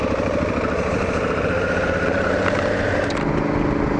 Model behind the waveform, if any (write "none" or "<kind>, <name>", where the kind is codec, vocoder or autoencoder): none